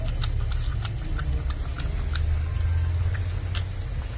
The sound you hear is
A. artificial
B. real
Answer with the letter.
B